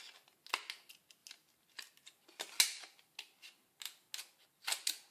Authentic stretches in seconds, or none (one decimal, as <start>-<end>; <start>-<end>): 0.0-5.1